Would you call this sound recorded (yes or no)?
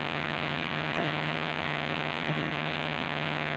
no